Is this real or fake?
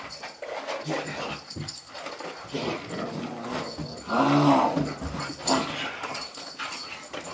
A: real